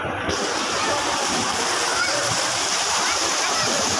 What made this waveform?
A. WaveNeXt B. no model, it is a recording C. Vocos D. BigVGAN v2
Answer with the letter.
D